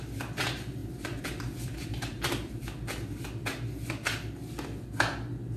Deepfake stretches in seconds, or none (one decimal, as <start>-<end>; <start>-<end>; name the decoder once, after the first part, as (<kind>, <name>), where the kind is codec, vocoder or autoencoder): 0.8-2.5 (vocoder, BigVGAN v2)